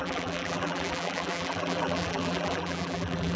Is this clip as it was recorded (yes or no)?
no